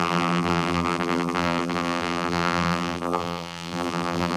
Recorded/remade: remade